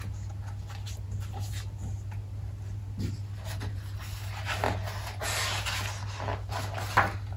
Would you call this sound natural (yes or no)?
yes